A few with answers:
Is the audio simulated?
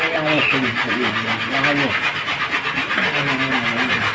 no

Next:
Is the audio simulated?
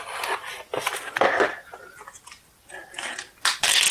no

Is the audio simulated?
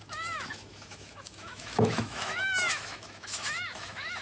yes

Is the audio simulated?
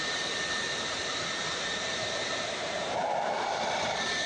yes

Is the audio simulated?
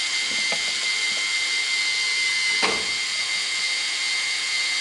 no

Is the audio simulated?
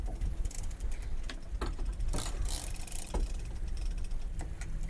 no